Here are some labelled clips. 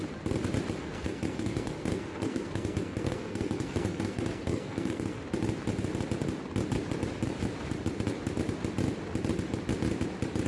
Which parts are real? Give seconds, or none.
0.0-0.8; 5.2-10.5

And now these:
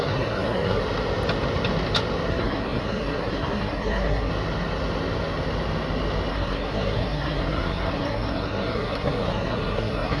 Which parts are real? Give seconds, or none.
0.8-2.3; 4.3-6.3

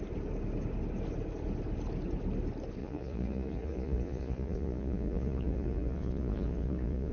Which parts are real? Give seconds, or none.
0.0-2.8

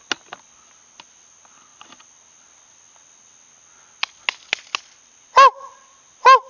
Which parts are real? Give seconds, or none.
0.0-6.5

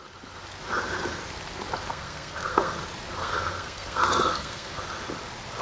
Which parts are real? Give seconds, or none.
0.0-1.9; 2.8-3.2; 4.8-5.6

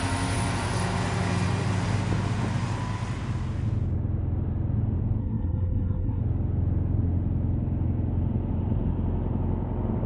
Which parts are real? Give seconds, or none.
0.0-5.2; 6.2-10.1